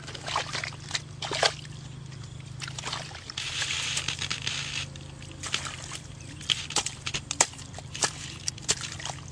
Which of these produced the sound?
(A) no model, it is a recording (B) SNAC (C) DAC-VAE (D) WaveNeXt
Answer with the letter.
A